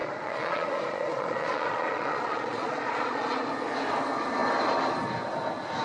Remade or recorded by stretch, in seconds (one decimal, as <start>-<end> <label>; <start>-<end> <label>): 0.0-3.5 remade; 3.5-5.8 recorded